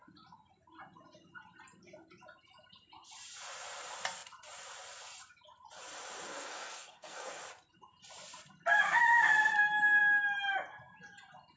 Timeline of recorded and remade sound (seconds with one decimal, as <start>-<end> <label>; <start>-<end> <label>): 0.0-6.3 recorded; 6.3-7.4 remade; 7.4-11.6 recorded

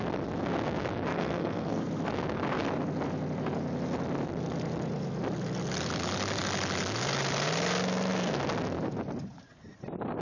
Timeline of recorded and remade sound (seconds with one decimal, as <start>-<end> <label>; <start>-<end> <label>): 0.0-1.1 recorded; 1.1-1.8 remade; 1.8-10.2 recorded

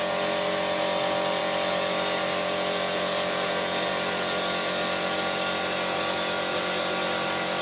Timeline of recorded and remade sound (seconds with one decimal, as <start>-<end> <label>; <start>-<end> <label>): 0.0-7.6 recorded